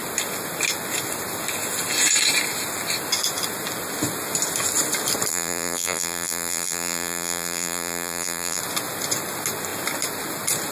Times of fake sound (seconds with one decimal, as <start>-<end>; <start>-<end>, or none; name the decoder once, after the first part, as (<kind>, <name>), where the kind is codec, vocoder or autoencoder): 5.3-8.6 (vocoder, BigVGAN v2)